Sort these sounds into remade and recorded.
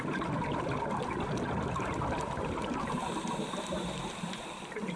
remade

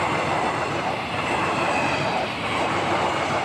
remade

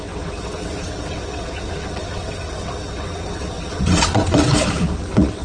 remade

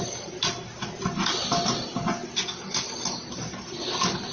recorded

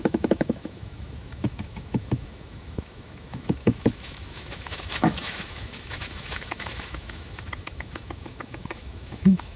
remade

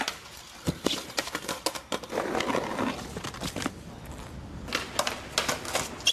recorded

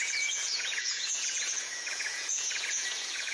remade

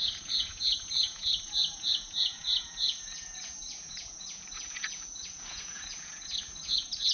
remade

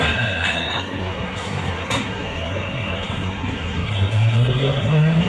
remade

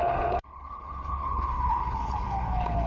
remade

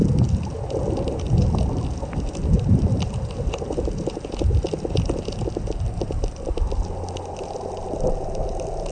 recorded